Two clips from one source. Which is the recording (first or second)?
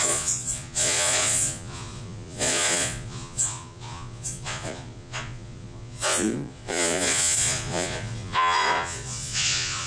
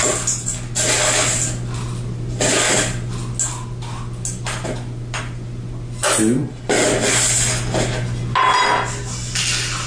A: second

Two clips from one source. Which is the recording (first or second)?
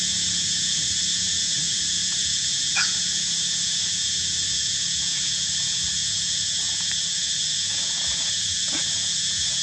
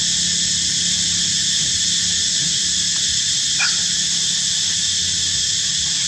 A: second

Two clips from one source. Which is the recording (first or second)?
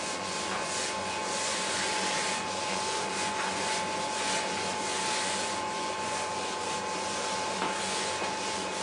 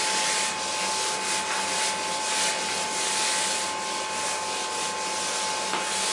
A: second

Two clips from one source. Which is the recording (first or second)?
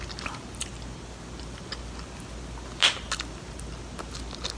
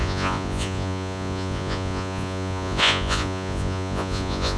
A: first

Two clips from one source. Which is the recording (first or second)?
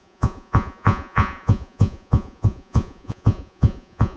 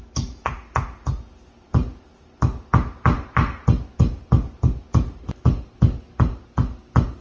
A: second